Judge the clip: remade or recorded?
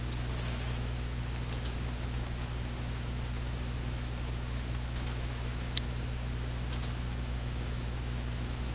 remade